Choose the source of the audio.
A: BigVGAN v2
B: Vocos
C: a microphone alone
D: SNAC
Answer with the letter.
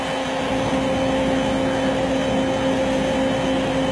C